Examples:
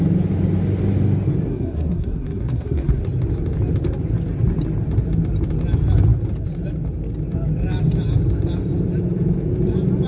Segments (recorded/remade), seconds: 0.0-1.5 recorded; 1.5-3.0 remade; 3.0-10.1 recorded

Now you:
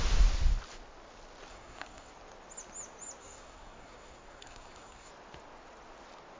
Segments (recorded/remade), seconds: 0.0-1.5 recorded; 1.5-2.1 remade; 2.1-3.2 recorded; 3.2-5.1 remade; 5.1-6.4 recorded

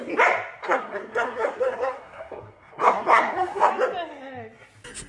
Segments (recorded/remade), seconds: 0.0-0.6 recorded; 0.6-3.7 remade; 3.7-5.1 recorded

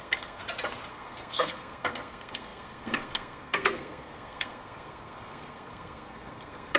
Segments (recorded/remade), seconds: 0.0-0.4 remade; 0.4-0.9 recorded; 0.9-6.8 remade

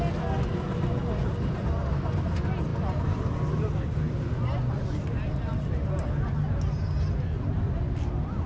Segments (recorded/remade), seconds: 0.0-8.5 recorded

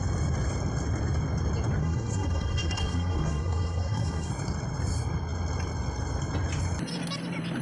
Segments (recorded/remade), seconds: 0.0-1.8 recorded; 1.8-4.3 remade; 4.3-7.6 recorded

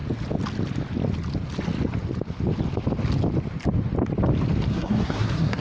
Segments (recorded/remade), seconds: 0.0-4.7 recorded; 4.7-5.6 remade